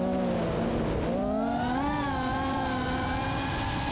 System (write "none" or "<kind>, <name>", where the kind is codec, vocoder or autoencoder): none